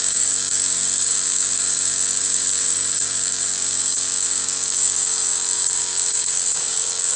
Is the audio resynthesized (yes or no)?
yes